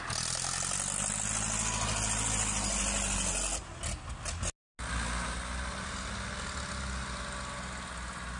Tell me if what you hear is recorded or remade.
recorded